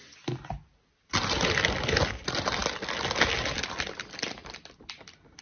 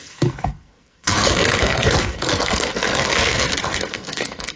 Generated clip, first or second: second